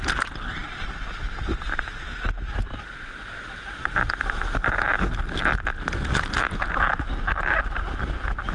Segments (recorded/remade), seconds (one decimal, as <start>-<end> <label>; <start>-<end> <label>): 0.0-8.5 recorded